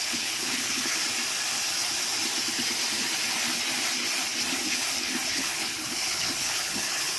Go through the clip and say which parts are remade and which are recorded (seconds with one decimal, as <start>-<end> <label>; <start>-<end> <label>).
0.0-1.0 remade; 1.0-5.3 recorded; 5.3-7.2 remade